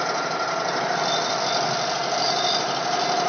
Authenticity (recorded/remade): recorded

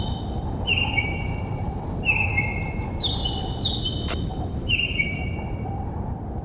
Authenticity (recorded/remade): recorded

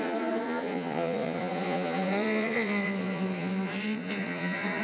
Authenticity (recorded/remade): remade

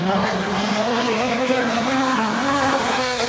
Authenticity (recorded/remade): remade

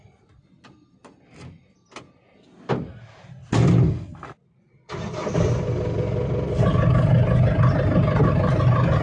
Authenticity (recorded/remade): recorded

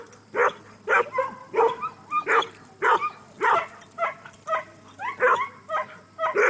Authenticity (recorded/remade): recorded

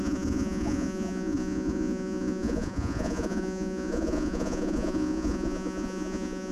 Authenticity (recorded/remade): remade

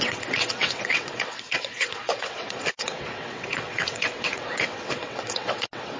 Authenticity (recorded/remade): remade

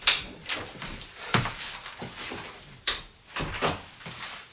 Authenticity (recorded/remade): recorded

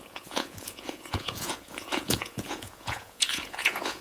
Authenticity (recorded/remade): remade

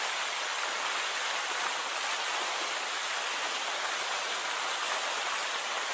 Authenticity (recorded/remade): recorded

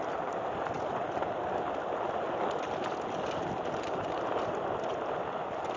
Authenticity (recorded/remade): recorded